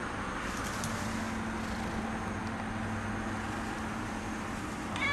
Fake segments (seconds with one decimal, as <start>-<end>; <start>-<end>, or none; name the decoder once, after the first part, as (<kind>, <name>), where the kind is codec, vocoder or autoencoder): none

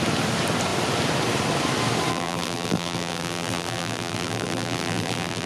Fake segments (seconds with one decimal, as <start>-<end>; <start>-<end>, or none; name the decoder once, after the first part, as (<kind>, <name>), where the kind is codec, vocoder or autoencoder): 2.1-5.5 (vocoder, BigVGAN v2)

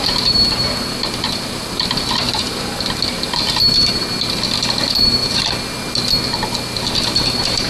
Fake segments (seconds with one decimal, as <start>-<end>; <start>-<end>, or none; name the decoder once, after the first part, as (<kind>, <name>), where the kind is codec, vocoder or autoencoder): none

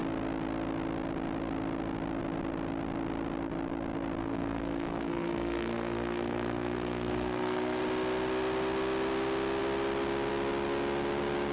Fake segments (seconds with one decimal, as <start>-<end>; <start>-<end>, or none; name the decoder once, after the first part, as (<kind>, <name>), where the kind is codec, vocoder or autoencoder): 4.2-7.8 (codec, SNAC)

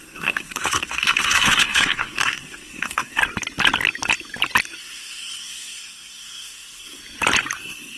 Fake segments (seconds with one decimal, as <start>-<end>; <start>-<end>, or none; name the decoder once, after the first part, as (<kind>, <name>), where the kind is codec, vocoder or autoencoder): 0.0-3.2 (codec, SNAC); 4.8-7.0; 7.6-8.0